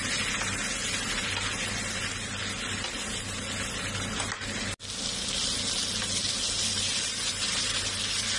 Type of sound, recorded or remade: recorded